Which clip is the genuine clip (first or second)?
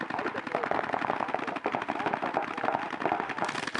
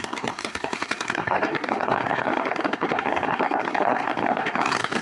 first